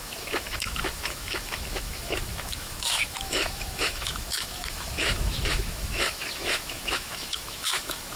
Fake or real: fake